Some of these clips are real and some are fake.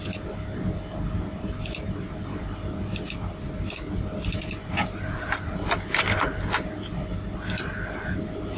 real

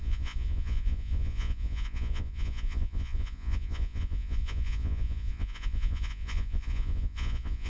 fake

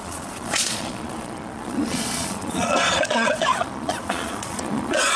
fake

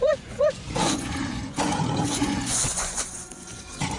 fake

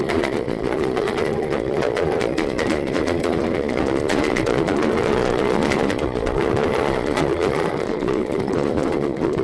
fake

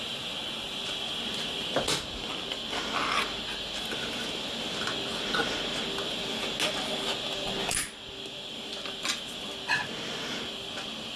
real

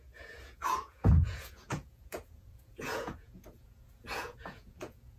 fake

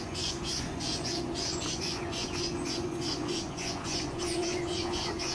fake